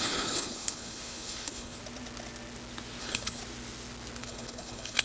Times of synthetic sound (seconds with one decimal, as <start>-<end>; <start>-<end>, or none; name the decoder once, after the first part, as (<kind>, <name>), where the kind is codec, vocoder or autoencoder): 0.0-1.8 (codec, HILCodec); 3.0-3.4; 4.2-5.0